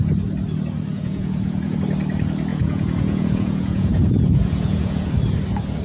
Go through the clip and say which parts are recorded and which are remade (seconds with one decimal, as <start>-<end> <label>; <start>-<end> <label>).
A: 0.0-0.9 recorded; 0.9-1.8 remade; 1.8-2.5 recorded; 2.5-5.1 remade; 5.1-5.8 recorded